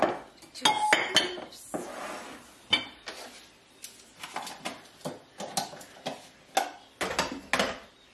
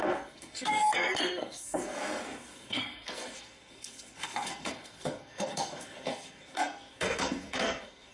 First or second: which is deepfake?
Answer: second